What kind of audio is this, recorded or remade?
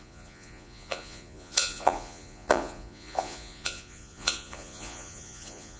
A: remade